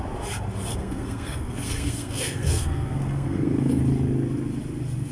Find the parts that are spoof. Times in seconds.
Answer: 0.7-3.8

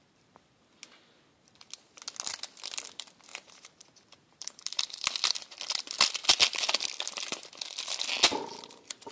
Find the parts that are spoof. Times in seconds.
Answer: 3.3-5.0

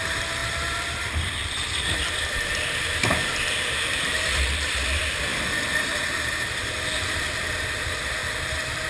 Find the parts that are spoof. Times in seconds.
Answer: 0.0-5.3; 5.8-8.2

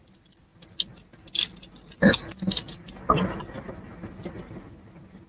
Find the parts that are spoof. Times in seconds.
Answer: none

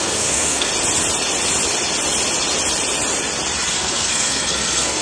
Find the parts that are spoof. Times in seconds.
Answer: 0.0-0.7; 3.7-5.0

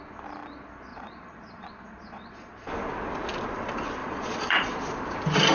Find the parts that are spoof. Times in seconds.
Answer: 0.9-2.9; 4.0-4.8

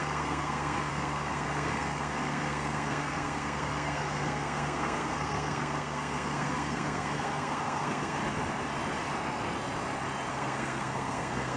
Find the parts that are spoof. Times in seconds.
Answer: 0.0-8.2; 10.3-11.6

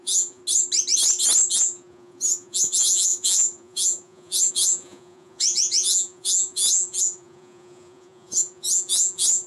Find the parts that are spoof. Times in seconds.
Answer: 0.0-0.4; 1.5-9.5